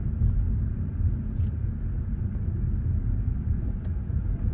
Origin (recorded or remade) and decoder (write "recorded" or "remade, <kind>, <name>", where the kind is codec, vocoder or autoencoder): remade, vocoder, BigVGAN v2